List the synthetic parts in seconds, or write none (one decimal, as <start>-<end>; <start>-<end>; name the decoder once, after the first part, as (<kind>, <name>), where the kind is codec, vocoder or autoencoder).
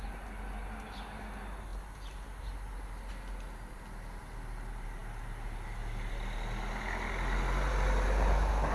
none